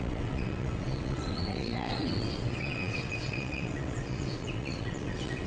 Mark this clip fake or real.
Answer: fake